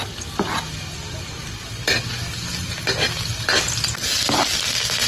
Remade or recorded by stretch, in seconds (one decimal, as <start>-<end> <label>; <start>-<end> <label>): 0.0-5.1 recorded